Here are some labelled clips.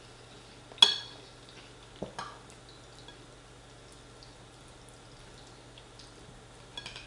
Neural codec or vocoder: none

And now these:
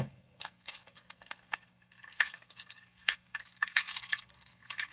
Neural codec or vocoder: codec, SNAC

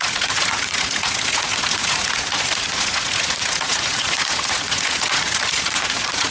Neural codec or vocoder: vocoder, Vocos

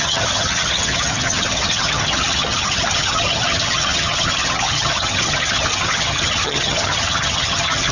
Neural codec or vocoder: vocoder, HiFi-GAN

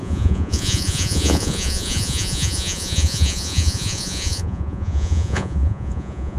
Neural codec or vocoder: vocoder, Vocos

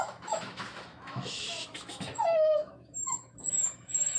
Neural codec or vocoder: autoencoder, DAC-VAE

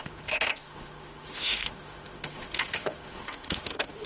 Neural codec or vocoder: autoencoder, DAC-VAE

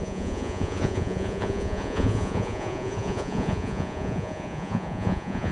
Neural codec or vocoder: vocoder, Vocos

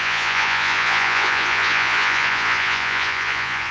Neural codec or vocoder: vocoder, Vocos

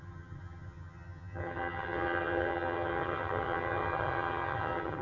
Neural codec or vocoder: vocoder, HiFi-GAN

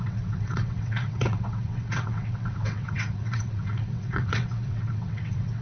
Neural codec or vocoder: vocoder, WaveNeXt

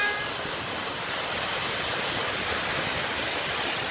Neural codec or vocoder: none